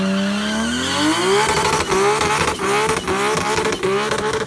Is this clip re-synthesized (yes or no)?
no